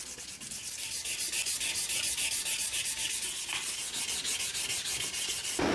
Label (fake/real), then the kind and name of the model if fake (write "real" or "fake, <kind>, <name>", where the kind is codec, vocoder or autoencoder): real